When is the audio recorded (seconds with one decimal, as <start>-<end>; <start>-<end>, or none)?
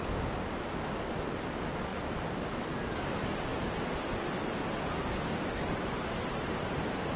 0.0-7.2